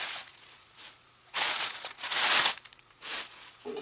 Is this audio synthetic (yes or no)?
yes